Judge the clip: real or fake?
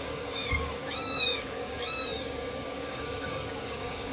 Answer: fake